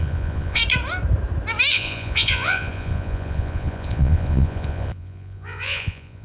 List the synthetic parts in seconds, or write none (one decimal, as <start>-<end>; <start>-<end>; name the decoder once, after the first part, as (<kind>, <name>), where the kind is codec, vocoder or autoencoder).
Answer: 0.0-0.6 (vocoder, Vocos); 1.7-6.2